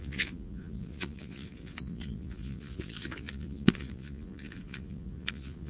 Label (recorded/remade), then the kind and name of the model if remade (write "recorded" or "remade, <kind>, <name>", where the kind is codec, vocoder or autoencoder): remade, vocoder, Vocos